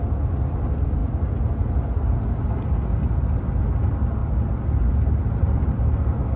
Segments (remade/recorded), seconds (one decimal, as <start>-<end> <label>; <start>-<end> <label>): 0.0-6.4 recorded